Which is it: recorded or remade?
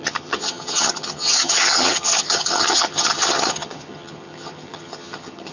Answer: remade